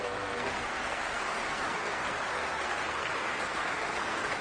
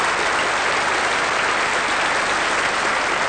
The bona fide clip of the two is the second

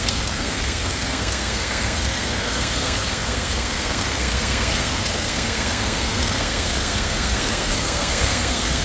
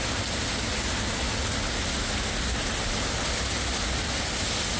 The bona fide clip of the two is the second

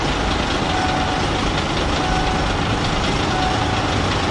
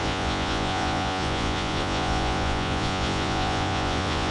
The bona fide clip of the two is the first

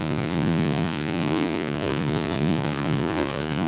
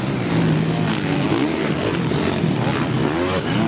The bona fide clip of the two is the second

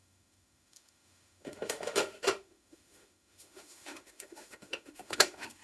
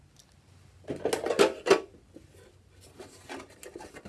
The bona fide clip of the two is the second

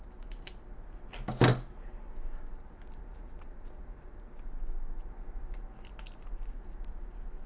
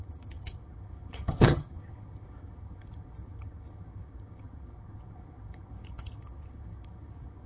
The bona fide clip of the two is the first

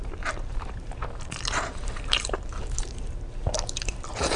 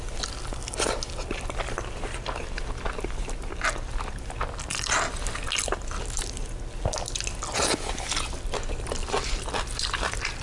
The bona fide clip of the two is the second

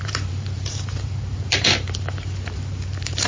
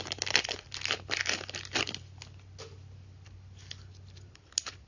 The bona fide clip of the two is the second